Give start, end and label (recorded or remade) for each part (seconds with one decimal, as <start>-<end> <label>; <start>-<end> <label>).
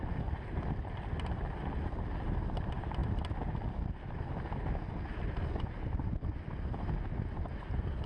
0.0-8.1 recorded